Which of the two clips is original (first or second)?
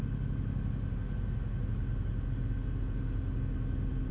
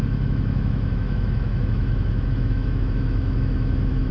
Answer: first